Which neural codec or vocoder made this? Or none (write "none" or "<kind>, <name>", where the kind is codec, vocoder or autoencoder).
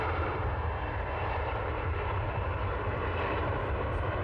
vocoder, BigVGAN v2